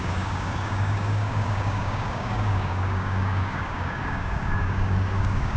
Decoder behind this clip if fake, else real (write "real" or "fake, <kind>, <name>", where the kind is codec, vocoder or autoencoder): fake, codec, DAC